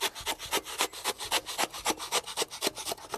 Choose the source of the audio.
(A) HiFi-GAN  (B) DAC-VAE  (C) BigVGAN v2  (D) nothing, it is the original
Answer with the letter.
D